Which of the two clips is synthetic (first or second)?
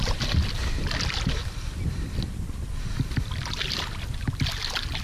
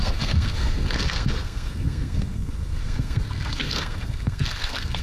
second